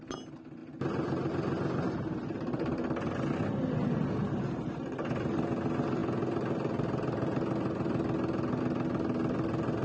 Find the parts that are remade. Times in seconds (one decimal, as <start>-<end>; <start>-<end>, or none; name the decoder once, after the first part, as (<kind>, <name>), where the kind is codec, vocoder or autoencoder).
none